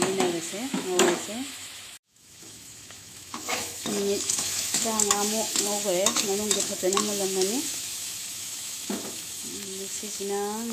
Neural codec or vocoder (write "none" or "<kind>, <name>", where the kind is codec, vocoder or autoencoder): autoencoder, DAC-VAE